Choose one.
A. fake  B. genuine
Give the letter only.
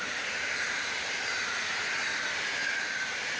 B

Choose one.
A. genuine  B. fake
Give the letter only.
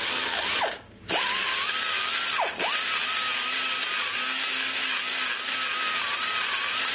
A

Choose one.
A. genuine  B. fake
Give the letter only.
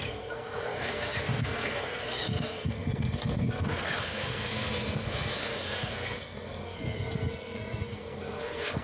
B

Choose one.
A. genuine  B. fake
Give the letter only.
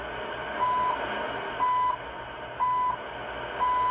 A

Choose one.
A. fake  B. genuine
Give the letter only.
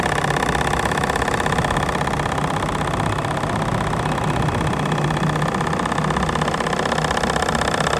B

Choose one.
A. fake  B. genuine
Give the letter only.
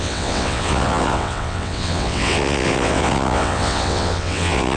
A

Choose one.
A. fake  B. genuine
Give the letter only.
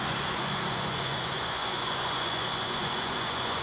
A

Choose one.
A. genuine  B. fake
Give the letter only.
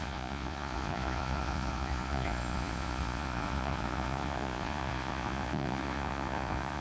B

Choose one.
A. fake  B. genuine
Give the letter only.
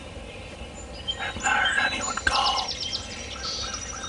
B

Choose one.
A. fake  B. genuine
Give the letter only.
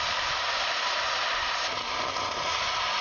A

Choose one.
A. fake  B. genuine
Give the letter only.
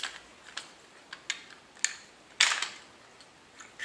B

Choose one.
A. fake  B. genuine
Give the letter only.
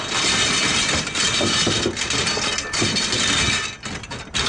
B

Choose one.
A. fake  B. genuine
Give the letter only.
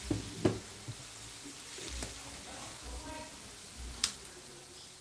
B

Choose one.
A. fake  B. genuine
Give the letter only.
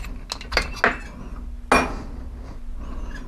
B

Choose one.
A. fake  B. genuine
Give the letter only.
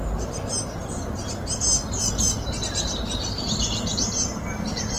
B